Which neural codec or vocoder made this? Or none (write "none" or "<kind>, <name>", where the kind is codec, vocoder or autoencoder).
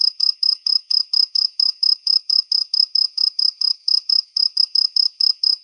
autoencoder, DAC-VAE